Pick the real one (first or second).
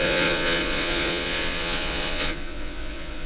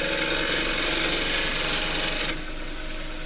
second